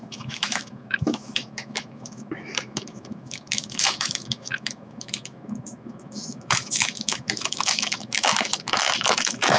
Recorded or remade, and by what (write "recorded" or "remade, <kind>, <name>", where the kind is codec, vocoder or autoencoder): remade, autoencoder, DAC-VAE